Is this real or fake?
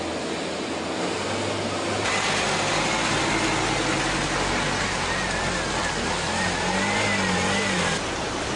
real